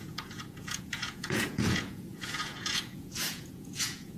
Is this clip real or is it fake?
fake